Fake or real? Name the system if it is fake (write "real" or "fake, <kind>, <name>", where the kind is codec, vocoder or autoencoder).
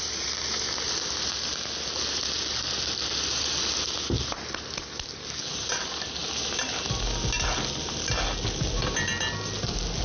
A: real